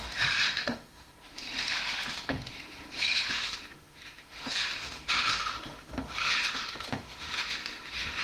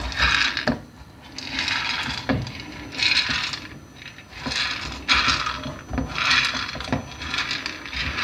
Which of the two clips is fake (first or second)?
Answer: first